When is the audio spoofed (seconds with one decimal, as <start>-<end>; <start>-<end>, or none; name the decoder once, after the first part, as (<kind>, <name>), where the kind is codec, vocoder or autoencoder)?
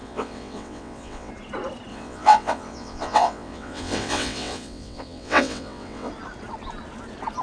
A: 0.0-1.3 (vocoder, WaveNeXt); 1.9-6.1